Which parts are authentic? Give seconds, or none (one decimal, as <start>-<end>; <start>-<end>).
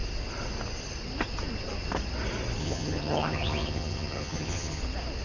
0.0-2.6; 4.8-5.2